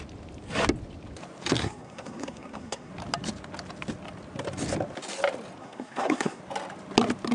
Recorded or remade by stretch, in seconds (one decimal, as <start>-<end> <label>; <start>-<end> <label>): 0.0-1.6 recorded; 1.6-2.9 remade; 2.9-5.6 recorded; 5.6-6.4 remade; 6.4-7.3 recorded